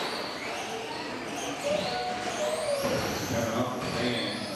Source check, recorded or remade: recorded